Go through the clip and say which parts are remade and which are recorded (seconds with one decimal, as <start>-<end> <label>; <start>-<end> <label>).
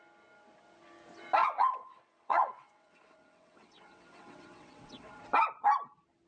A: 0.0-1.4 recorded; 1.4-5.2 remade; 5.2-6.3 recorded